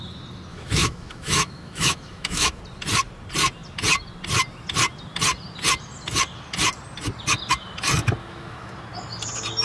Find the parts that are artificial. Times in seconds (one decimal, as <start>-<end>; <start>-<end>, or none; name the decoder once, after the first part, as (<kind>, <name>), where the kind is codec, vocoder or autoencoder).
0.5-2.6 (autoencoder, DAC-VAE); 8.2-8.7